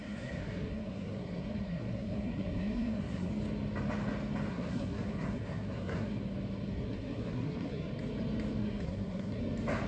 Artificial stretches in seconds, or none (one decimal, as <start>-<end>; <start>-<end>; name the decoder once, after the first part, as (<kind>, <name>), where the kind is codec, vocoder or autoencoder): 0.0-3.3 (codec, SNAC); 4.5-6.2; 6.7-7.9; 8.6-9.4